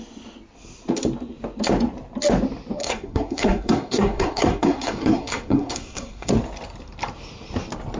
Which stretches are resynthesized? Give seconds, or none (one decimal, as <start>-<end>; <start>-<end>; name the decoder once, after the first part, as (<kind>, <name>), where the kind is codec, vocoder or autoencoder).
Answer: 2.8-6.3 (codec, SNAC)